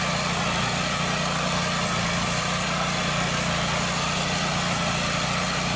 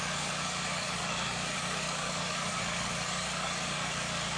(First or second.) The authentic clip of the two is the first